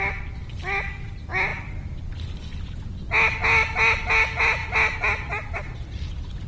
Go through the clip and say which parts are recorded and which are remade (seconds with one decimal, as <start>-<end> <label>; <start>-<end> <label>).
0.0-6.5 recorded